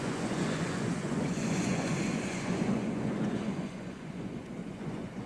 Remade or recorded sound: remade